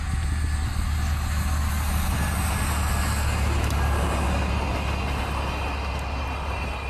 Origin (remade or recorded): recorded